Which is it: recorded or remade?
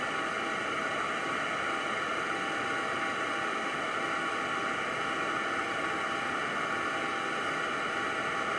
recorded